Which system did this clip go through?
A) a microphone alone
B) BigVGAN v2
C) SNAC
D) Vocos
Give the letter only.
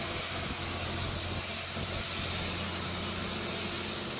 A